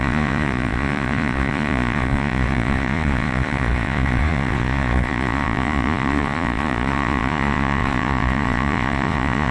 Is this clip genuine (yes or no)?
no